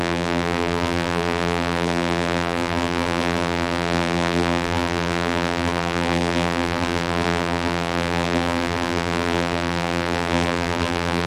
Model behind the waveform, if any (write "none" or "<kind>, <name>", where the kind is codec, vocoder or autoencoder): vocoder, BigVGAN v2